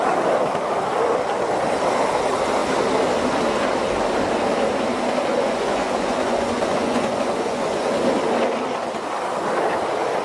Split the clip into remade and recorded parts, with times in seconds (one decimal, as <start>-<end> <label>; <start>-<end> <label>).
0.0-5.3 recorded; 5.3-8.2 remade; 8.2-10.2 recorded